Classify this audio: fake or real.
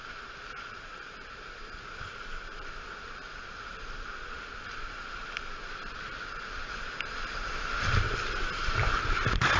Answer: fake